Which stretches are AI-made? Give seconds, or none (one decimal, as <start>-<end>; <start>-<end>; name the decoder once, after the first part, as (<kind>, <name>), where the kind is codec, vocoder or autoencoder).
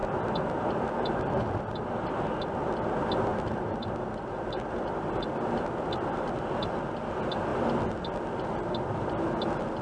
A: 0.0-1.9 (vocoder, BigVGAN v2); 3.3-6.8